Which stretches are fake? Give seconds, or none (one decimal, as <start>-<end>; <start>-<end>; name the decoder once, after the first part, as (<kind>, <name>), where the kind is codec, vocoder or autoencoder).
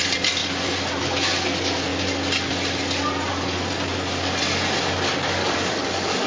5.4-6.3 (codec, DAC)